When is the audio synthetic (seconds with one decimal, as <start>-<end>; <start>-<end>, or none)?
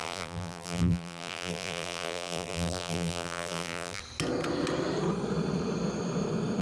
0.0-4.0